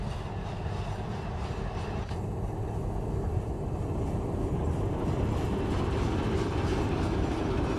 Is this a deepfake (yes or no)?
no